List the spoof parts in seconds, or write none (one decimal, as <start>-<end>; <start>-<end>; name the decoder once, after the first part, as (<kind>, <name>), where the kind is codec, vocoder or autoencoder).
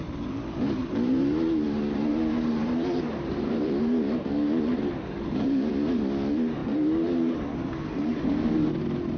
0.8-5.7 (vocoder, BigVGAN v2); 6.6-8.2